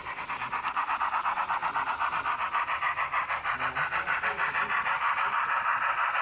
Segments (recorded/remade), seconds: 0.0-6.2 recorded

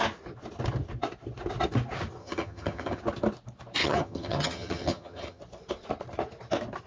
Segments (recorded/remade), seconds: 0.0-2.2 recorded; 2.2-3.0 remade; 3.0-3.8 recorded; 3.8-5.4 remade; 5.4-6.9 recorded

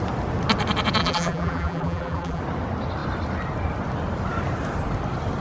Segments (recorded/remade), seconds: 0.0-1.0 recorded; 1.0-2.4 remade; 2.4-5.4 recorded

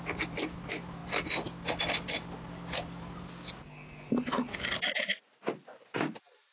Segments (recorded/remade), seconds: 0.0-5.7 recorded; 5.7-6.5 remade

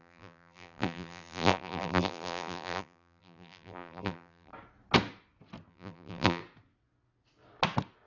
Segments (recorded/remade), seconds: 0.0-4.5 remade; 4.5-5.7 recorded; 5.7-6.4 remade; 6.4-8.1 recorded

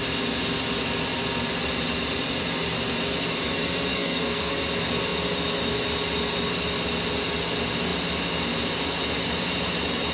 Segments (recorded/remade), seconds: 0.0-3.9 recorded; 3.9-4.5 remade; 4.5-10.1 recorded

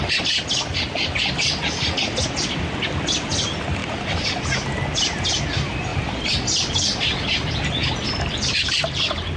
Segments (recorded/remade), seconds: 0.0-0.7 recorded; 0.7-2.7 remade; 2.7-3.8 recorded; 3.8-4.4 remade; 4.4-5.9 recorded; 5.9-6.7 remade; 6.7-9.4 recorded

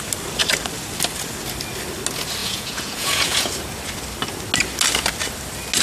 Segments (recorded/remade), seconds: 0.0-2.4 recorded; 2.4-3.5 remade; 3.5-5.8 recorded